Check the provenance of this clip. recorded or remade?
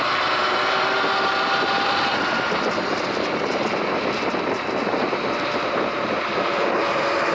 recorded